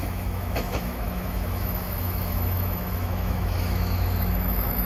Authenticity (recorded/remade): remade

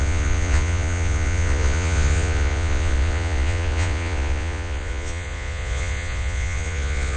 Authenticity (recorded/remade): remade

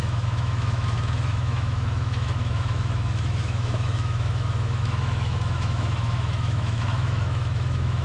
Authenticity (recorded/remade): remade